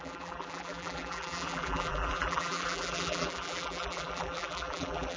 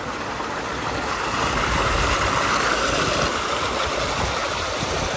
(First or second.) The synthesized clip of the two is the first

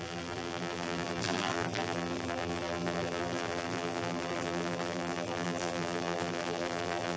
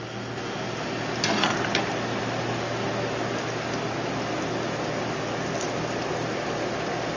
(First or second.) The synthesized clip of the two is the first